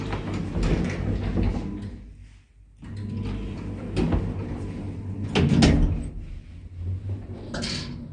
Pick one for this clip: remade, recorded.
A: recorded